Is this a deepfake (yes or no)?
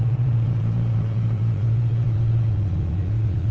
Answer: yes